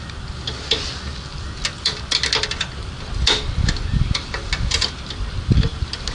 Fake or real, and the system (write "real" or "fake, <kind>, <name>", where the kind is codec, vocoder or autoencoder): real